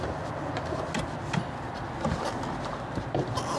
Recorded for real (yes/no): yes